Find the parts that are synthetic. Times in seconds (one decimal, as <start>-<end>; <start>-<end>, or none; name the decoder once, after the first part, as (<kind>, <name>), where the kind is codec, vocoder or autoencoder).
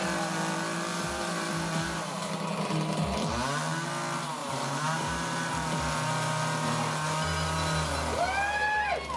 0.9-2.2 (vocoder, BigVGAN v2); 4.4-5.5